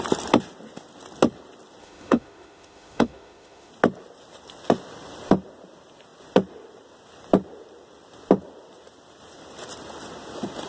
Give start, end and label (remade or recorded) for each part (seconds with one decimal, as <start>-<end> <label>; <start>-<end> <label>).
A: 0.0-1.8 recorded; 1.8-3.7 remade; 3.7-10.7 recorded